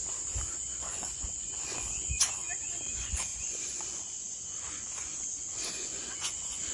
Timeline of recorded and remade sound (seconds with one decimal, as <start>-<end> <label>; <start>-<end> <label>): 0.0-0.5 recorded; 0.5-6.7 remade